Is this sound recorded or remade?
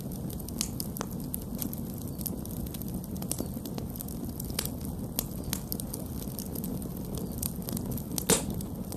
recorded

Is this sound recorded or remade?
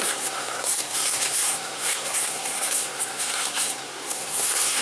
remade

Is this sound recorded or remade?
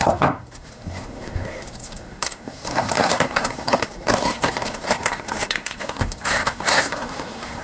remade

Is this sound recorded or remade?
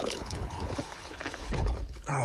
remade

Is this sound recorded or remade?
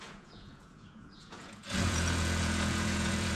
remade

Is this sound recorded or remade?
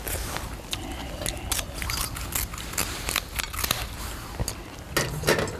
recorded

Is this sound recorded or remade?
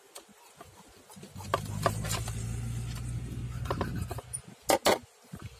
recorded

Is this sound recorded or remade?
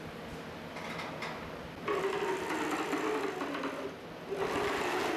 recorded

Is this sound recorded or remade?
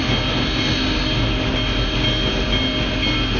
recorded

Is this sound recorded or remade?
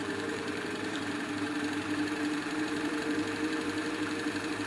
remade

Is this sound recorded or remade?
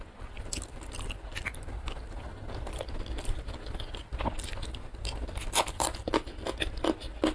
recorded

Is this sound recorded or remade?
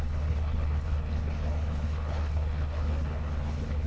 remade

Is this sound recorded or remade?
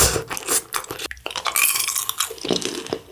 recorded